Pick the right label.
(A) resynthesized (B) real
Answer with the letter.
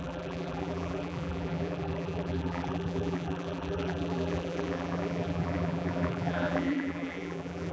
A